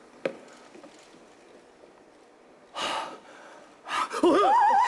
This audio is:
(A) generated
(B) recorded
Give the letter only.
B